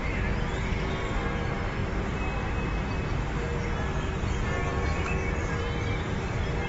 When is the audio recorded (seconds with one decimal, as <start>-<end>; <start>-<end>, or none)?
0.0-6.7